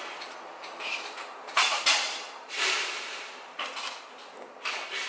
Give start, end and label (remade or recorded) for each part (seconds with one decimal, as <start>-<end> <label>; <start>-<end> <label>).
0.0-0.6 recorded; 0.6-3.7 remade; 3.7-5.1 recorded